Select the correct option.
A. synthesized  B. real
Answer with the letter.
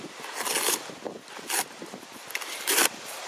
B